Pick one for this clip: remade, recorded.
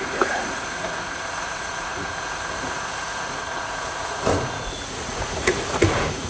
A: remade